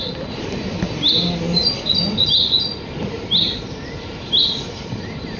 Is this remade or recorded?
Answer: recorded